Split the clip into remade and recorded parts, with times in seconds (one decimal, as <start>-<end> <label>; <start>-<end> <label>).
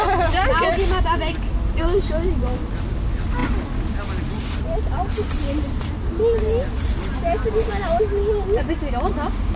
0.0-9.6 recorded